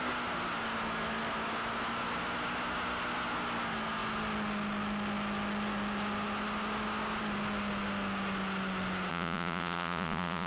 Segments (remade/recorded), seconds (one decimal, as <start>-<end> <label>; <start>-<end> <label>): 0.0-9.1 recorded; 9.1-10.5 remade

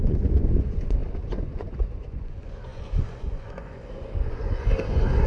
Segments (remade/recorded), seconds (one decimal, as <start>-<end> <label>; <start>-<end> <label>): 0.0-5.3 remade

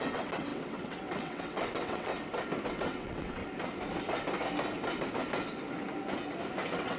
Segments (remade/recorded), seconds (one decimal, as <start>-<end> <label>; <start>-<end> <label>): 0.0-2.1 remade; 2.1-2.7 recorded; 2.7-3.4 remade; 3.4-6.6 recorded; 6.6-7.0 remade

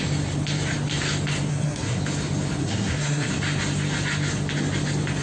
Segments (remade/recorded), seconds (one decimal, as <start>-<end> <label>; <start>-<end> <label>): 0.0-1.5 recorded; 1.5-2.0 remade; 2.0-2.6 recorded; 2.6-3.3 remade; 3.3-5.2 recorded

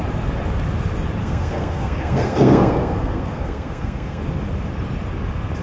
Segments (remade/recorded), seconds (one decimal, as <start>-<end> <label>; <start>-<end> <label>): 0.0-1.2 recorded; 1.2-4.2 remade; 4.2-5.6 recorded

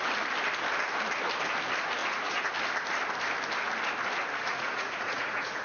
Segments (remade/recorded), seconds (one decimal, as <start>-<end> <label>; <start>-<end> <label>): 0.0-2.0 recorded; 2.0-2.5 remade; 2.5-4.5 recorded; 4.5-5.6 remade

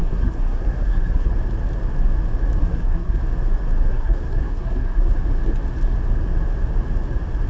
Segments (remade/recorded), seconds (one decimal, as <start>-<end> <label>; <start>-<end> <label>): 0.0-1.3 remade; 1.3-2.6 recorded; 2.6-3.2 remade; 3.2-3.9 recorded; 3.9-5.1 remade; 5.1-7.5 recorded